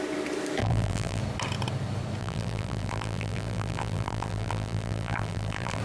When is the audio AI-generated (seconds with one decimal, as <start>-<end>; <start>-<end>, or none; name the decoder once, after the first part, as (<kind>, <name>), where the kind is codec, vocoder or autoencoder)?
0.6-1.2 (vocoder, BigVGAN v2); 2.2-5.8